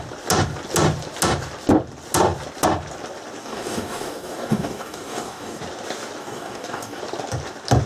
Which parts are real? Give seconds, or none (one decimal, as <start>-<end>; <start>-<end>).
0.0-3.4; 5.6-6.2; 7.0-7.9